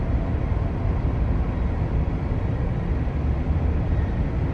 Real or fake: real